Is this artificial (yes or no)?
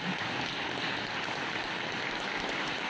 no